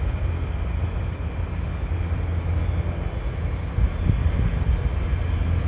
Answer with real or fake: real